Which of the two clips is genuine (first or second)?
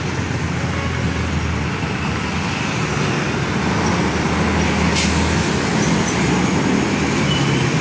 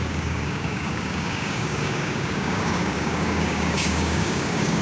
first